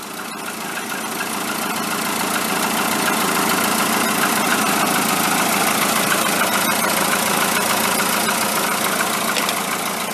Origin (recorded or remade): recorded